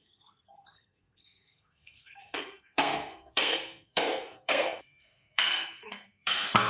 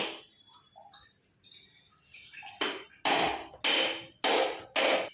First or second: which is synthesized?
first